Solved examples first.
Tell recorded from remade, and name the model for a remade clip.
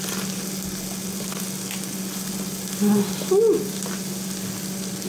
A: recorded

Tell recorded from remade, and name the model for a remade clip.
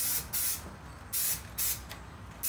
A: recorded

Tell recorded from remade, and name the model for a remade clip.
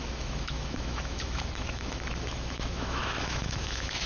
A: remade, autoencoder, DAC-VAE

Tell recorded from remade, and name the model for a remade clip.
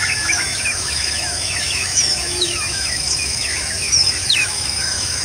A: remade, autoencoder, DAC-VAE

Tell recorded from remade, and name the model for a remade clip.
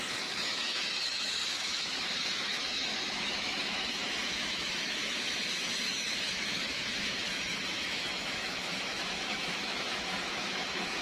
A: remade, autoencoder, DAC-VAE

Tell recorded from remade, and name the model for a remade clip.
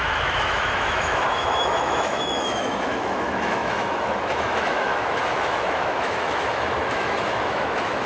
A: remade, autoencoder, DAC-VAE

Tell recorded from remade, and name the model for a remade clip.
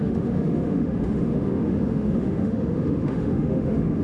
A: remade, autoencoder, DAC-VAE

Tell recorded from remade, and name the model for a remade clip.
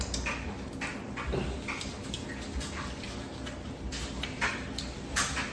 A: recorded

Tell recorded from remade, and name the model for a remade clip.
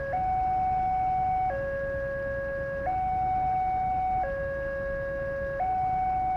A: recorded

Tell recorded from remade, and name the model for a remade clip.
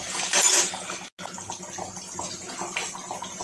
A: recorded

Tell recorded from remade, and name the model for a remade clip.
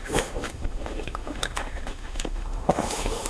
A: remade, autoencoder, DAC-VAE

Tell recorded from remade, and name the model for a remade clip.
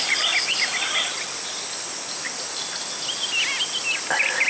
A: recorded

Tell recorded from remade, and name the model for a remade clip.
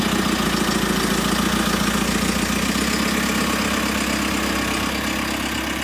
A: recorded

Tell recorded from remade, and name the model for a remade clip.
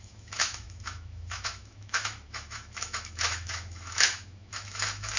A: remade, autoencoder, DAC-VAE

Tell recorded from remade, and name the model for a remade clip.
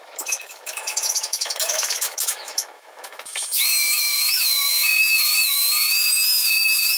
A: remade, autoencoder, DAC-VAE